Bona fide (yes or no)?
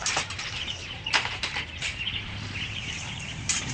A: no